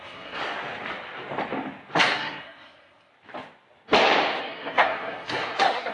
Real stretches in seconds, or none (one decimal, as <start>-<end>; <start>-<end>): 0.4-2.0; 3.1-4.4